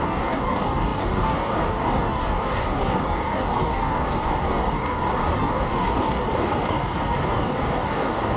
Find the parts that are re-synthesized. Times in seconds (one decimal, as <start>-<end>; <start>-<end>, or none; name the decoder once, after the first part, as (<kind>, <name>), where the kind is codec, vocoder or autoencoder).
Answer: 0.0-8.4 (codec, DAC)